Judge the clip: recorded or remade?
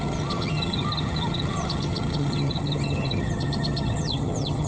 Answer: remade